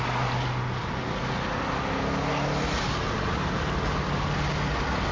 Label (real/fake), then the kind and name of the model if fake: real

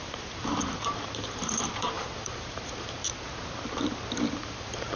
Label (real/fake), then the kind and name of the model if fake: fake, vocoder, BigVGAN v2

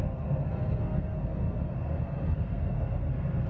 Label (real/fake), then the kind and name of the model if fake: fake, codec, SNAC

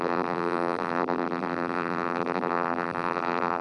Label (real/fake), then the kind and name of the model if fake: fake, vocoder, BigVGAN v2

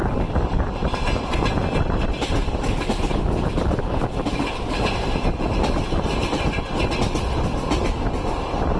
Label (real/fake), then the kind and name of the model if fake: real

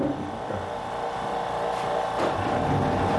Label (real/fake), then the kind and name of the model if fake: real